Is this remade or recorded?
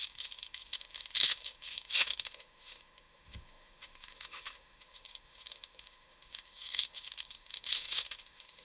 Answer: remade